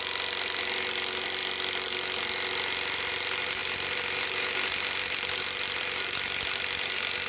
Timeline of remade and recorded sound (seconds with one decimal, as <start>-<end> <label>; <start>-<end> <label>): 0.0-7.3 recorded